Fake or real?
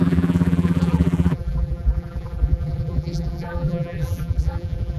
fake